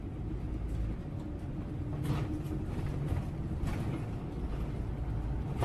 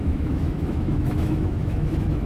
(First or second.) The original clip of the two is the first